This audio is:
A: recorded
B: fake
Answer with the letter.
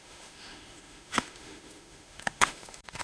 B